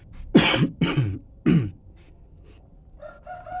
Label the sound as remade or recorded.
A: recorded